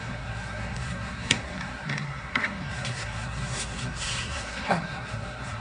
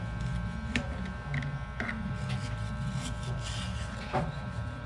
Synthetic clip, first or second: first